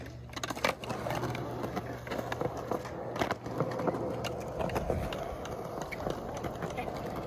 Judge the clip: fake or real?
real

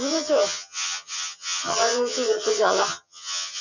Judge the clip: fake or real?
fake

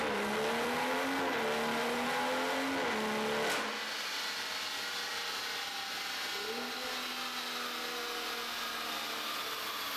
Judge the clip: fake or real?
real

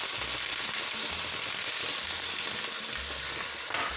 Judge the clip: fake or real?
real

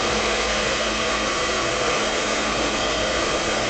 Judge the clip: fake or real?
fake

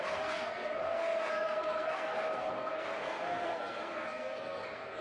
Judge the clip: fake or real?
fake